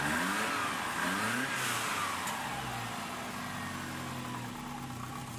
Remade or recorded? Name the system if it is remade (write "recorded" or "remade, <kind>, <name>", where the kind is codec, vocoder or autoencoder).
recorded